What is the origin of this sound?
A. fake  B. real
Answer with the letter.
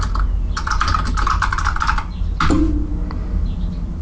B